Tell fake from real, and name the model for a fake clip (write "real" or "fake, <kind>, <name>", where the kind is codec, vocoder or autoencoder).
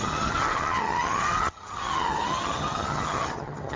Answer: fake, vocoder, HiFi-GAN